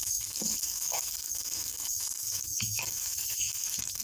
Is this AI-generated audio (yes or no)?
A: yes